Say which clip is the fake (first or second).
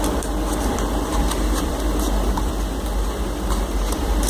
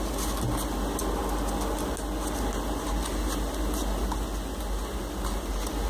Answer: first